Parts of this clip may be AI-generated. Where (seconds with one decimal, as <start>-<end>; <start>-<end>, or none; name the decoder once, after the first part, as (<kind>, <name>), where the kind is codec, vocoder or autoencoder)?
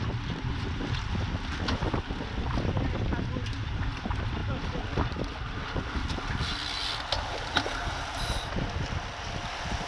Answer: none